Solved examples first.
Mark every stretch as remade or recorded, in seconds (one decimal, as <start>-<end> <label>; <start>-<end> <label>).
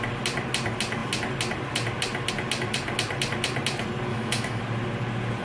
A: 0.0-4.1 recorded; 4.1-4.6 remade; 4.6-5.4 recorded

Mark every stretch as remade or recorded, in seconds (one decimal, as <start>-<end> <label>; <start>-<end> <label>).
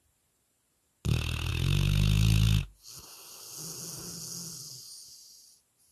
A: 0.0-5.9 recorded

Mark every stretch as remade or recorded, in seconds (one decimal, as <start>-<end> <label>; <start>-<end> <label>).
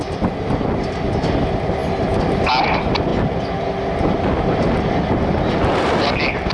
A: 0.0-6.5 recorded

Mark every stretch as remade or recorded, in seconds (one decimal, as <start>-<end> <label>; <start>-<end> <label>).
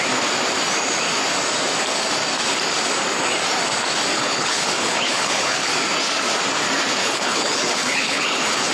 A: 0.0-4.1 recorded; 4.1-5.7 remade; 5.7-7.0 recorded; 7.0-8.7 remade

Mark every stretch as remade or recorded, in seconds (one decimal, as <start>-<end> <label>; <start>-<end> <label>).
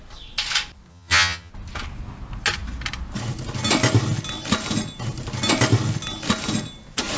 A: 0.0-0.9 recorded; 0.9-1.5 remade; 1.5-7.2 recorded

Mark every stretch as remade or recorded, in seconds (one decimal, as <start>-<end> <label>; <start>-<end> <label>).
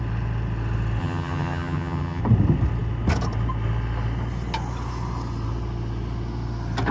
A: 0.0-1.0 recorded; 1.0-2.2 remade; 2.2-6.9 recorded